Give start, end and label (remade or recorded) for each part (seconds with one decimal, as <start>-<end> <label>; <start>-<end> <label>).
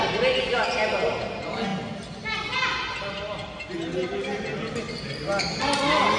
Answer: 0.0-6.2 recorded